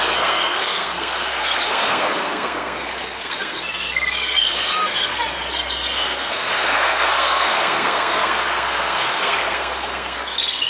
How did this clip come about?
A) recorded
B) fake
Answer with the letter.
B